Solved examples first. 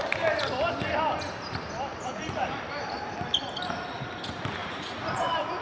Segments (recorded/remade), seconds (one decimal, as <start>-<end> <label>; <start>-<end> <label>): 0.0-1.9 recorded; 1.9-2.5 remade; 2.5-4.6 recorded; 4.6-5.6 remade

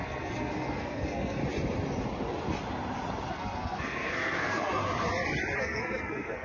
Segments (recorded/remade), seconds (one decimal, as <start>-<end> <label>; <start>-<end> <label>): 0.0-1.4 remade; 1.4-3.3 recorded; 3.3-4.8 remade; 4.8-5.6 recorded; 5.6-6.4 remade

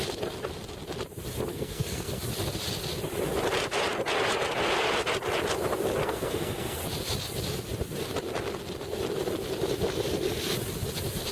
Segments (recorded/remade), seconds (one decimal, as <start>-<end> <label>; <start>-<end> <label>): 0.0-1.5 recorded; 1.5-2.2 remade; 2.2-6.0 recorded; 6.0-6.8 remade; 6.8-11.3 recorded

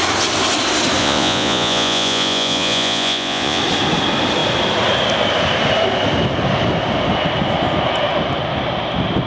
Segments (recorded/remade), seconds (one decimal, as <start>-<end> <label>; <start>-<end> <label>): 0.0-1.0 recorded; 1.0-3.6 remade; 3.6-9.3 recorded